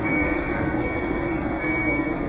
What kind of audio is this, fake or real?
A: fake